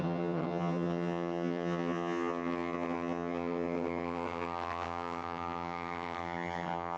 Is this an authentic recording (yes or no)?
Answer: no